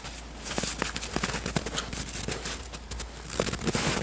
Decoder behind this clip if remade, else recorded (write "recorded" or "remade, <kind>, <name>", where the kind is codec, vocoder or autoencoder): recorded